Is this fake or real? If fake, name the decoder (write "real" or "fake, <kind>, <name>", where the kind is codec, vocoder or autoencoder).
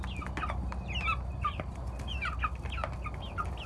real